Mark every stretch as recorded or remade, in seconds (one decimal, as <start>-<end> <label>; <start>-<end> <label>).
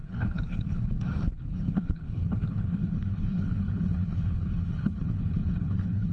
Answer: 0.0-6.1 remade